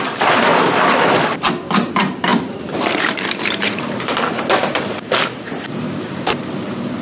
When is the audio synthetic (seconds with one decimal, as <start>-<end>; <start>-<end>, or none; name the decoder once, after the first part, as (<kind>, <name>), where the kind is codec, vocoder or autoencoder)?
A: 0.0-0.5 (vocoder, BigVGAN v2); 1.9-7.0